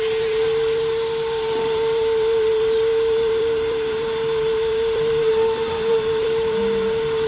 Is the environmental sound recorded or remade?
remade